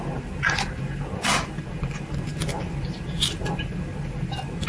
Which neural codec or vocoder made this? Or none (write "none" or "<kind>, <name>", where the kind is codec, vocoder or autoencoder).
none